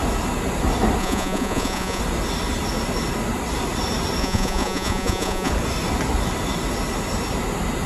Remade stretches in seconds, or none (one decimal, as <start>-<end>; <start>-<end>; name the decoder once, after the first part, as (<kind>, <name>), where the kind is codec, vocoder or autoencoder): 1.0-2.0 (vocoder, Vocos); 4.2-5.5